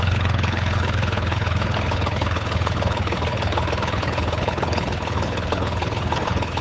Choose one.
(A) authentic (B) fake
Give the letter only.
B